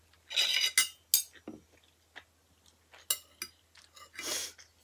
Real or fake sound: real